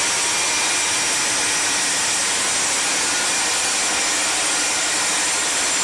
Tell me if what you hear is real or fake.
real